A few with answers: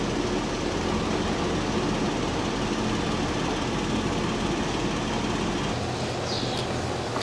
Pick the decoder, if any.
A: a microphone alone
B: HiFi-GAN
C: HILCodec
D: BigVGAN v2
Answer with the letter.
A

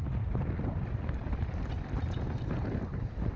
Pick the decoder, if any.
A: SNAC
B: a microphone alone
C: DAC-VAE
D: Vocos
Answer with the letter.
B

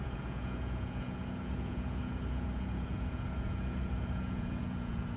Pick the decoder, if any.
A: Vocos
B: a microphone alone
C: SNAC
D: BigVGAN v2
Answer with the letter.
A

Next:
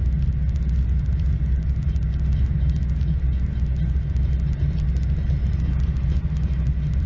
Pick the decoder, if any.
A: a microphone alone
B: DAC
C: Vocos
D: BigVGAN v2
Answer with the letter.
A